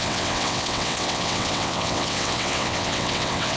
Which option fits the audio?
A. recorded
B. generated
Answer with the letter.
B